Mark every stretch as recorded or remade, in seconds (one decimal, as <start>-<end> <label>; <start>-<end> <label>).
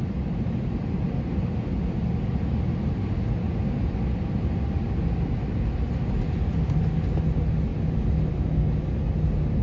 0.0-9.6 recorded